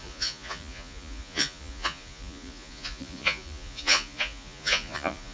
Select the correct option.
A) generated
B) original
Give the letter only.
A